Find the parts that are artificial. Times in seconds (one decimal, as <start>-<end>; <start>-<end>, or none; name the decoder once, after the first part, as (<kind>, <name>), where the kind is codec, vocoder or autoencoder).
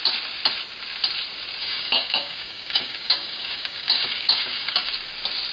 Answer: 1.6-4.9 (codec, DAC)